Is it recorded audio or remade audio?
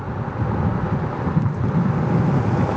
recorded